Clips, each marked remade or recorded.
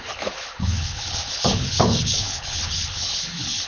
remade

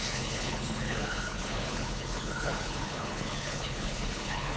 remade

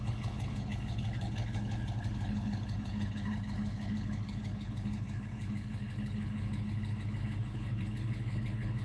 remade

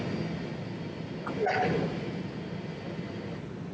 recorded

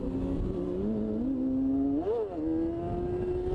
recorded